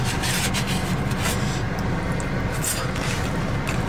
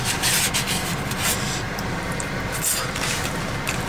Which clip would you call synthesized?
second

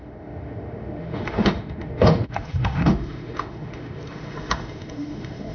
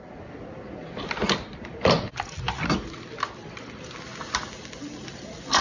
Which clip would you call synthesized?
first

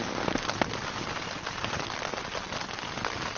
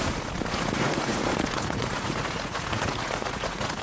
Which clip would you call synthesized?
second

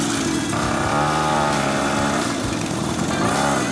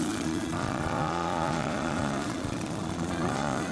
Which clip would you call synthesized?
second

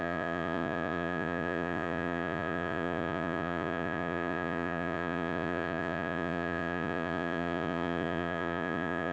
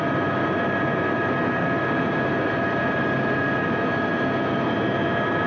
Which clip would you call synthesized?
first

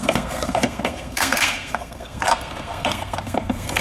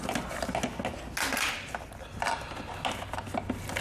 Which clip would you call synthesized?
first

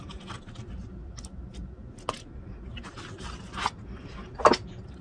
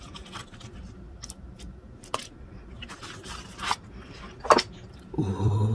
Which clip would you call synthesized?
second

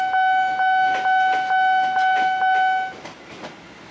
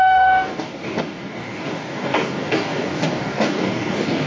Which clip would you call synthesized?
second